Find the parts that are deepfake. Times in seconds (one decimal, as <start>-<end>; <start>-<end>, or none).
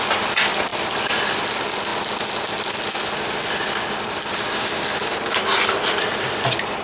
none